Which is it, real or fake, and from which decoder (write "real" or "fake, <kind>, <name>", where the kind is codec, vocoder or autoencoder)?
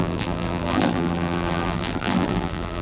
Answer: fake, vocoder, BigVGAN v2